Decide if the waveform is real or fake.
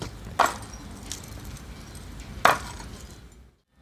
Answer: real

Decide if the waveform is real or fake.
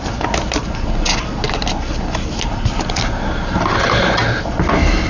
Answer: real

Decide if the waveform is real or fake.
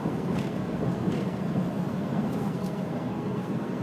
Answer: fake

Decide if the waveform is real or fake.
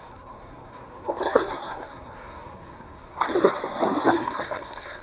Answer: fake